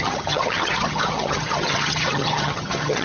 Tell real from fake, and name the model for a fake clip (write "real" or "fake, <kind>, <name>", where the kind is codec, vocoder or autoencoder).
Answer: fake, vocoder, HiFi-GAN